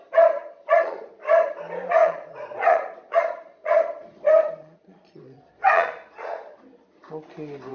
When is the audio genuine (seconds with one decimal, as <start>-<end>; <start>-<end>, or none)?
0.0-0.4; 1.1-2.0; 6.6-7.7